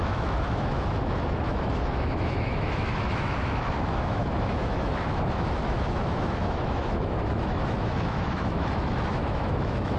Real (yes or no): no